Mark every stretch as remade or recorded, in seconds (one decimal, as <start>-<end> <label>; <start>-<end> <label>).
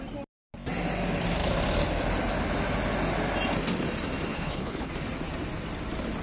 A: 0.0-4.3 recorded; 4.3-4.9 remade; 4.9-6.2 recorded